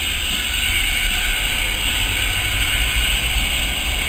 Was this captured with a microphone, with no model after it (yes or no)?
yes